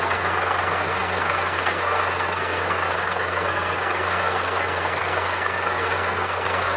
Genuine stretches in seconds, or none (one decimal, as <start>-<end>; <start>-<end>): none